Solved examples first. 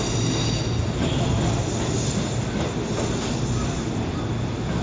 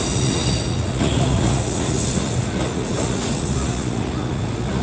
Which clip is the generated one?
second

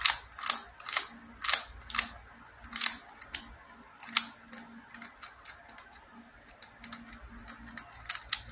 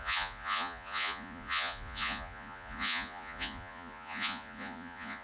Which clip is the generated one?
second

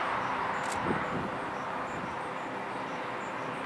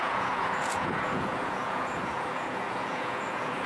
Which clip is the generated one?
second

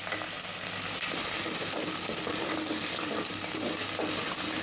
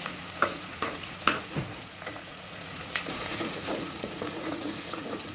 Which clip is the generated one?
second